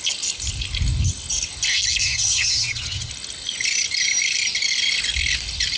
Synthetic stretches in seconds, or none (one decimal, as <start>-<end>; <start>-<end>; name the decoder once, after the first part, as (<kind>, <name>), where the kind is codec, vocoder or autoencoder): 2.0-3.1 (vocoder, HiFi-GAN)